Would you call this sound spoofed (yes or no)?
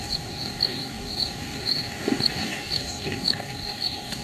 yes